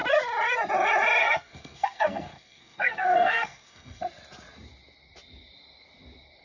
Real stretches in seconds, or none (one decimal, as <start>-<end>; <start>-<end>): 0.0-1.2; 4.0-6.4